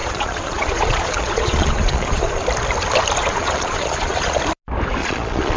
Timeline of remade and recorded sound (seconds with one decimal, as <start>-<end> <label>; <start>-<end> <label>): 0.0-2.4 remade; 2.4-3.2 recorded; 3.2-4.4 remade; 4.4-5.0 recorded; 5.0-5.6 remade